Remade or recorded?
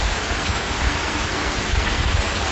remade